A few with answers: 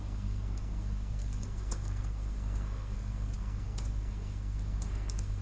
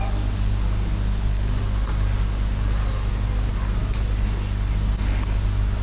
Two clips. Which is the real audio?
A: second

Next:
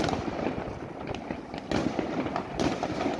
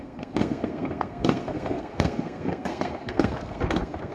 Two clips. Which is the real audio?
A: first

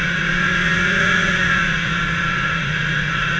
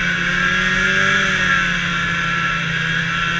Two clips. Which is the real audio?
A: second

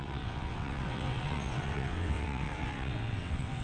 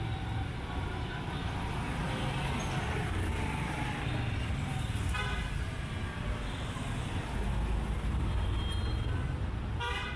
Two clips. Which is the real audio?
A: second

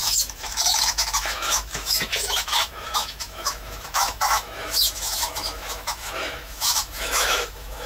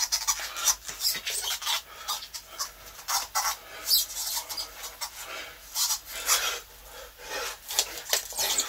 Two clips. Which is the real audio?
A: second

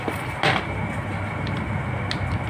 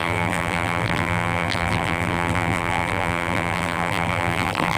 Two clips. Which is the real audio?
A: first